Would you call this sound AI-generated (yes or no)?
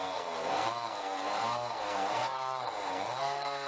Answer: yes